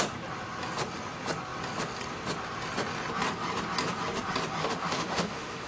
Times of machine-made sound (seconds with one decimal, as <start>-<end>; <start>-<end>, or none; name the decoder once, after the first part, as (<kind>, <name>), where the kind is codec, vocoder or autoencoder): 4.6-5.7 (autoencoder, DAC-VAE)